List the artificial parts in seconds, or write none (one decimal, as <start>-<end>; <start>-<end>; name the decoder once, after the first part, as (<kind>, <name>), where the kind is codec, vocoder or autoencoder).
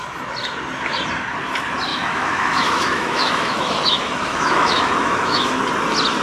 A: 1.9-5.6 (autoencoder, DAC-VAE)